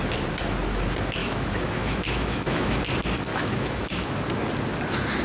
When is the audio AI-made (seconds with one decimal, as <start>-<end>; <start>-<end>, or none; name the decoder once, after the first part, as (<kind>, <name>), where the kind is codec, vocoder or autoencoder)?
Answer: 1.2-2.8 (autoencoder, DAC-VAE); 3.3-4.1